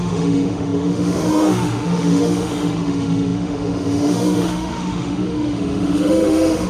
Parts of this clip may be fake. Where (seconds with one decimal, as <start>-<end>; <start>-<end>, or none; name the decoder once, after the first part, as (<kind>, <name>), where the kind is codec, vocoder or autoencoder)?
0.0-6.7 (autoencoder, DAC-VAE)